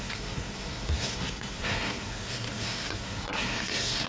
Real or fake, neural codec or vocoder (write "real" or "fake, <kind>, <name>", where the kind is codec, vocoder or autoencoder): fake, codec, SNAC